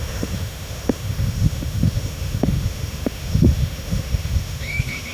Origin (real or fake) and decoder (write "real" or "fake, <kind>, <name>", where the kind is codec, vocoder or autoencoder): fake, autoencoder, DAC-VAE